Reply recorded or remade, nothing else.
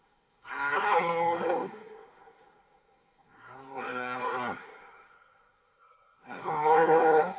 remade